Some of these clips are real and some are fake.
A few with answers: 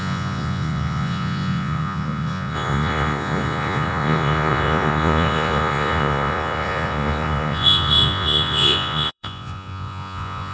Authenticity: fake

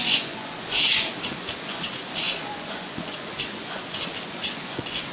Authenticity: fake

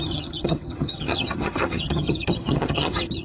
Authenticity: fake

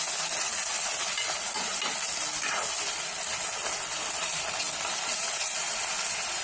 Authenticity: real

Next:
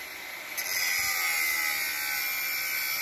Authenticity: real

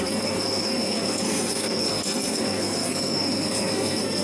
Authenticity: fake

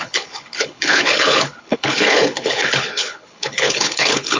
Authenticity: fake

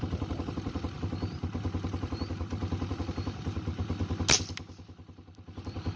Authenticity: real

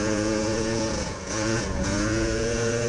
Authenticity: fake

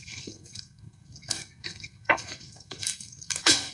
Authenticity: fake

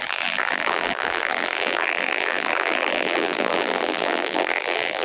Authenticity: fake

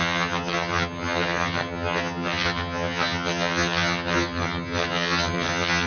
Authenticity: fake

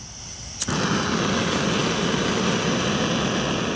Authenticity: real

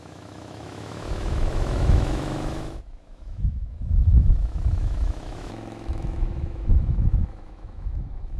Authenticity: fake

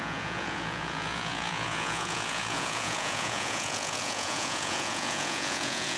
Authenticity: fake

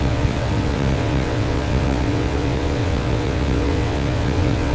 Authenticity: fake